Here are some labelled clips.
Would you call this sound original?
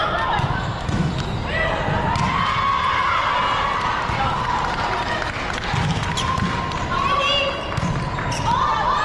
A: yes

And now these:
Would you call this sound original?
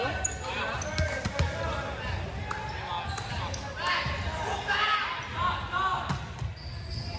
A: yes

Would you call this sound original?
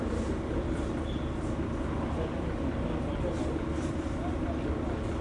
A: yes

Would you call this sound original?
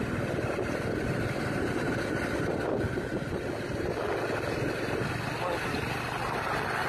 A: yes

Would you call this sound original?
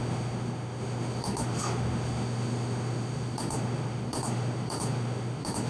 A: no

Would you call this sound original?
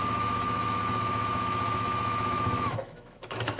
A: no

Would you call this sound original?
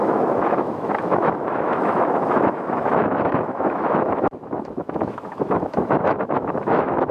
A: no